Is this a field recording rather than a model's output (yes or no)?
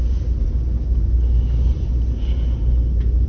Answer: yes